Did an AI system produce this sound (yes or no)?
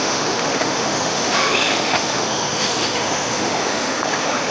yes